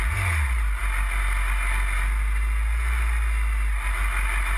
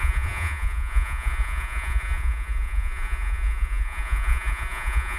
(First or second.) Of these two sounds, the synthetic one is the second